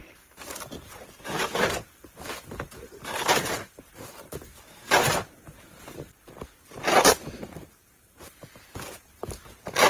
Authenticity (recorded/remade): remade